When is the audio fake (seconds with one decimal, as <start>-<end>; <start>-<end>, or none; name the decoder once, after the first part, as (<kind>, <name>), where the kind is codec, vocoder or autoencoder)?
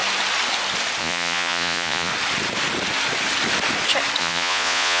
1.0-2.1 (vocoder, Vocos); 4.2-5.0